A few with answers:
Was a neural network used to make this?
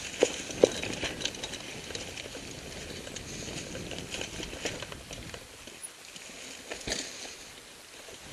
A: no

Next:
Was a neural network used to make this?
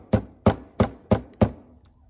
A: no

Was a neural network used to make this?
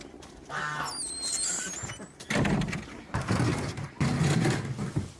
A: no